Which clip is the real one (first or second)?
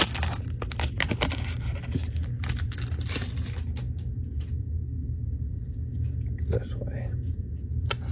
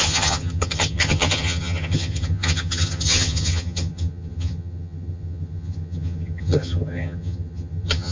first